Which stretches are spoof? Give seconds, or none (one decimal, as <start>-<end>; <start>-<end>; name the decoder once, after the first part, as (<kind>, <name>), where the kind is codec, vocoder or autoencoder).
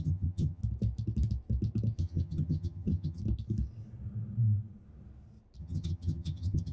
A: 0.0-0.6 (vocoder, HiFi-GAN); 2.0-3.2; 5.6-6.7